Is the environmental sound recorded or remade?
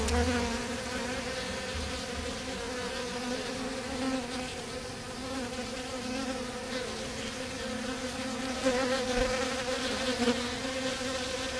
recorded